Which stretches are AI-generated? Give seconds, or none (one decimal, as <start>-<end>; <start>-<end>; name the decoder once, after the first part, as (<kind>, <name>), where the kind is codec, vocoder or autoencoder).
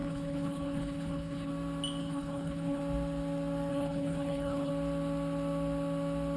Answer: 0.0-1.5 (codec, HILCodec); 2.0-2.8; 3.7-4.7